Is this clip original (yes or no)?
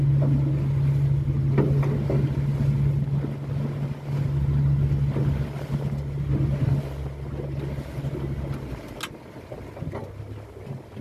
yes